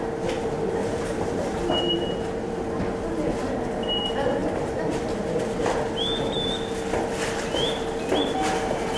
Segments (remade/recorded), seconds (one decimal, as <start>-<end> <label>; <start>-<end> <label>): 0.0-0.8 recorded; 0.8-1.7 remade; 1.7-4.4 recorded; 4.4-5.2 remade; 5.2-9.0 recorded